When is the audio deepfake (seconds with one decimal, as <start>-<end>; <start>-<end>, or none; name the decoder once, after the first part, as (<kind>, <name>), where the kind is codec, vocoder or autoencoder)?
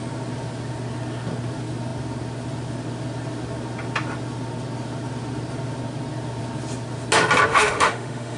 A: 7.5-8.4 (autoencoder, DAC-VAE)